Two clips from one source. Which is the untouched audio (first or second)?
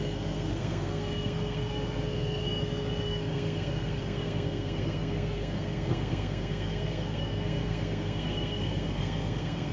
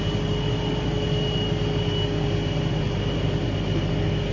second